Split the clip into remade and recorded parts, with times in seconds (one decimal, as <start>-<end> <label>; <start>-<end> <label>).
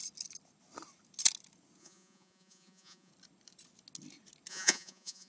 0.0-1.8 recorded; 1.8-3.1 remade; 3.1-4.5 recorded; 4.5-5.3 remade